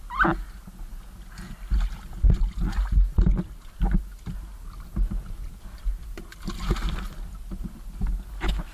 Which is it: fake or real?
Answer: real